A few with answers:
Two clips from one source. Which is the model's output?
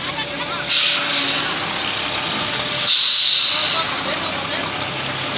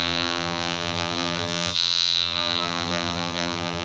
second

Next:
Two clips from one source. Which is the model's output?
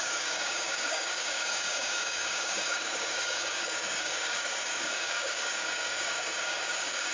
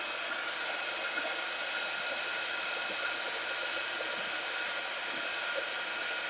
first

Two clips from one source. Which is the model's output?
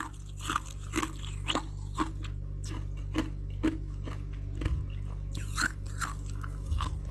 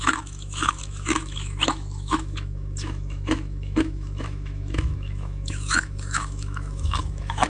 second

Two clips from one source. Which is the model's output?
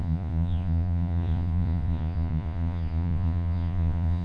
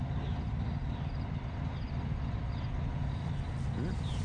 first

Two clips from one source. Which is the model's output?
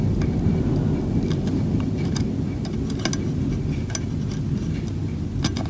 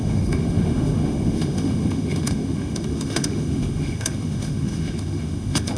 second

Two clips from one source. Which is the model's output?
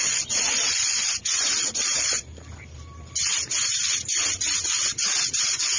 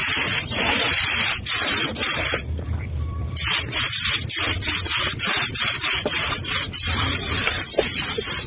second